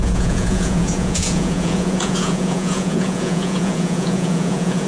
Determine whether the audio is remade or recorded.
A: remade